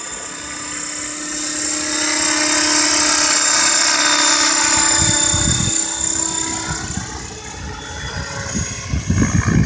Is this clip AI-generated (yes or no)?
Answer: no